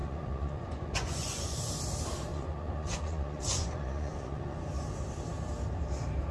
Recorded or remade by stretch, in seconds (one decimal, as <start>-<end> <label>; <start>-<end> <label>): 0.0-1.7 remade; 1.7-2.3 recorded; 2.3-4.6 remade; 4.6-6.3 recorded

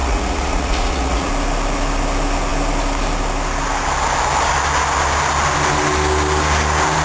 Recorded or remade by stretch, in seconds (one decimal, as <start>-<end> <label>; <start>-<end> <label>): 0.0-1.3 remade; 1.3-7.0 recorded

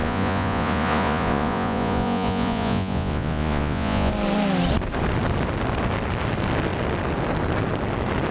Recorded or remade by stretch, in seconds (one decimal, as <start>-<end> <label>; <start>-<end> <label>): 0.0-4.1 remade; 4.1-8.3 recorded